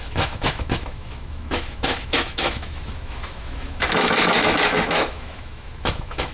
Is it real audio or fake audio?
fake